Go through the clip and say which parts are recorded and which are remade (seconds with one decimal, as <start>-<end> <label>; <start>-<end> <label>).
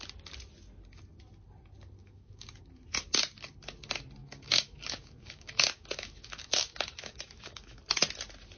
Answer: 0.0-2.0 recorded; 2.0-2.5 remade; 2.5-4.2 recorded; 4.2-7.8 remade; 7.8-8.6 recorded